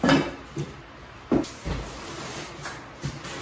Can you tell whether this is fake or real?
real